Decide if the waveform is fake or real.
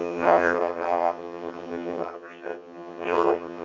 fake